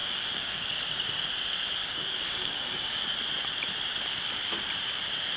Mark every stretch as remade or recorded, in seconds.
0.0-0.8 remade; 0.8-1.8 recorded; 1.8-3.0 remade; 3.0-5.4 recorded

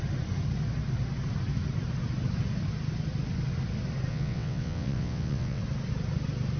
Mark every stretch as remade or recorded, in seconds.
0.0-4.1 recorded; 4.1-5.6 remade; 5.6-6.6 recorded